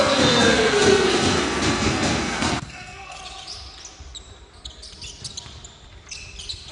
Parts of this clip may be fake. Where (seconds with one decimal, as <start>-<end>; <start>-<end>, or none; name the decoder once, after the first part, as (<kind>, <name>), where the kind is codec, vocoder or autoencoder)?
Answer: 0.0-3.2 (codec, SNAC)